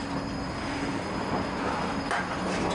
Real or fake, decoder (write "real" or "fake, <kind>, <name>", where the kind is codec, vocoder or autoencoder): real